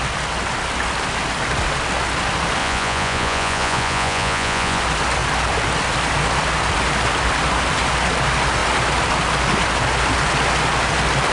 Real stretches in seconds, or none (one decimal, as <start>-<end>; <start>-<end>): 0.0-2.6; 4.8-11.3